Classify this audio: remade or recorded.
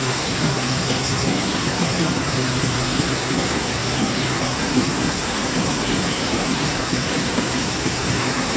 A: remade